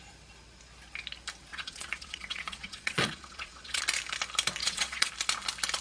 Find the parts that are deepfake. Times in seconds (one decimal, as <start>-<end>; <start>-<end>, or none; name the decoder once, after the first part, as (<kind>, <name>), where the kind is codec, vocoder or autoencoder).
1.5-3.8 (vocoder, Vocos); 4.6-5.1